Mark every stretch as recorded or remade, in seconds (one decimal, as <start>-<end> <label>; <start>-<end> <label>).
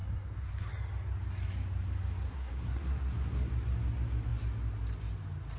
0.0-0.7 remade; 0.7-2.3 recorded; 2.3-3.5 remade; 3.5-5.6 recorded